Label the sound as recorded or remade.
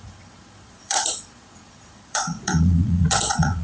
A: remade